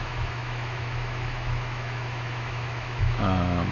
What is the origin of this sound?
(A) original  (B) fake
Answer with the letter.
B